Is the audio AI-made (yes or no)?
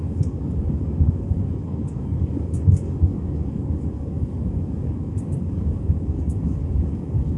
yes